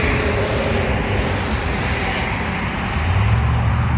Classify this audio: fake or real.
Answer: real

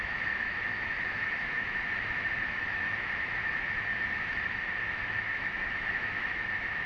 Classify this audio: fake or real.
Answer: fake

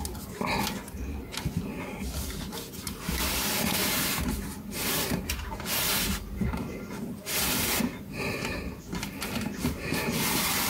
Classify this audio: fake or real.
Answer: real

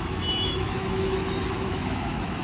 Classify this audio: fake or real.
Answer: fake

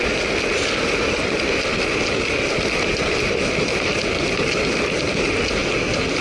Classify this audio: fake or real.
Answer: real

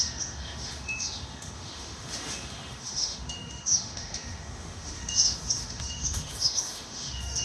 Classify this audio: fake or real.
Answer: fake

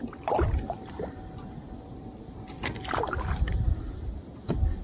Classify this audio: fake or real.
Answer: real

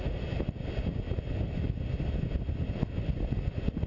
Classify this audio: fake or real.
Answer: real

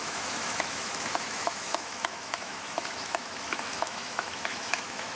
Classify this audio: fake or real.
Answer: fake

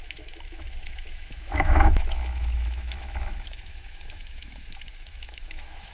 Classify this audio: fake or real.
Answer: fake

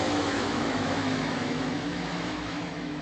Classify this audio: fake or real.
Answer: fake